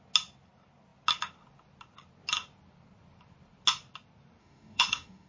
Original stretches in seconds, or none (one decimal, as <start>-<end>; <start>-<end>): 0.0-4.4